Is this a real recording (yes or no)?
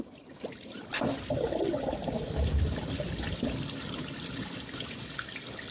yes